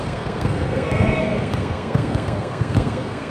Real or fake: fake